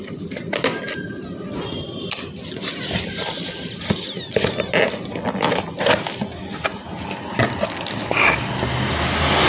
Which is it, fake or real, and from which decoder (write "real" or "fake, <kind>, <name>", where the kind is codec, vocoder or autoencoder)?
real